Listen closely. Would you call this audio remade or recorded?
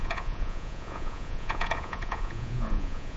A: remade